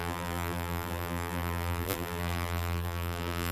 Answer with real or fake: fake